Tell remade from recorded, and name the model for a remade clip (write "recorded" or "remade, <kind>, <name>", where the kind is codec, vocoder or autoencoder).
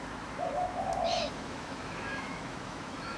remade, autoencoder, DAC-VAE